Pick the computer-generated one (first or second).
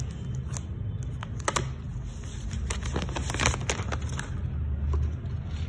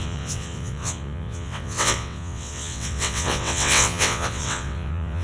second